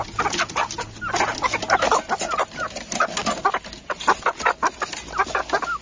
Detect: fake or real real